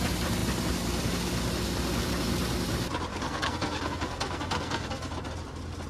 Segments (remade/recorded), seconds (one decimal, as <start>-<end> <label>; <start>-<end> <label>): 0.0-3.1 recorded; 3.1-5.1 remade; 5.1-5.9 recorded